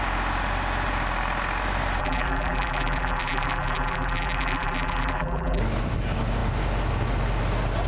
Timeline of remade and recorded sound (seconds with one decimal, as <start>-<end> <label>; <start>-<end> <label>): 0.0-2.0 recorded; 2.0-5.6 remade; 5.6-7.9 recorded